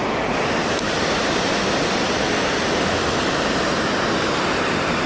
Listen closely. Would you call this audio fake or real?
real